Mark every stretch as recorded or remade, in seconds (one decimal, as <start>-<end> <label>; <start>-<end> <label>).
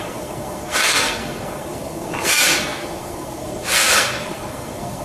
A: 0.0-5.0 remade